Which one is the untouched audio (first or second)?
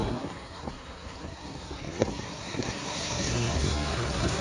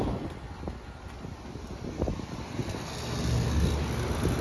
second